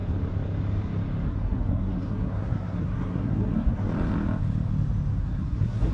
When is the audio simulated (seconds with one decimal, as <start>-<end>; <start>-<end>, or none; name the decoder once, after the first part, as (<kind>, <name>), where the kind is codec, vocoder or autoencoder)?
1.3-3.9 (codec, SNAC); 5.2-5.9